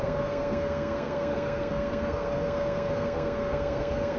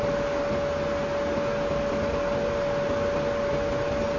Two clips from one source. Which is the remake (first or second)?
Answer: first